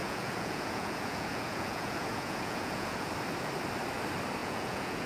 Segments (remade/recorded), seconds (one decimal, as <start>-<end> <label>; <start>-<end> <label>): 0.0-3.1 remade; 3.1-4.4 recorded; 4.4-5.1 remade